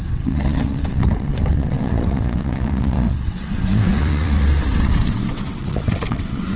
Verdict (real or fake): fake